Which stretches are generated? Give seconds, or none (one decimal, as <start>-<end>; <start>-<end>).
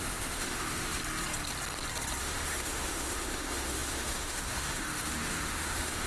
0.0-1.0; 2.2-6.1